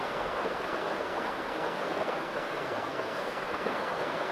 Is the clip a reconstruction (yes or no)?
yes